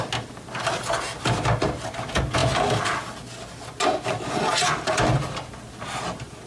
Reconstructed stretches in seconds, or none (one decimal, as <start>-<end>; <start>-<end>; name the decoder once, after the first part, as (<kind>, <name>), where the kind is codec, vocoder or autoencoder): none